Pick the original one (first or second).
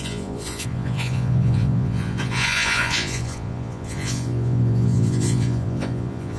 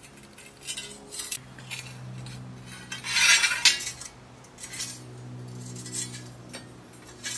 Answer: second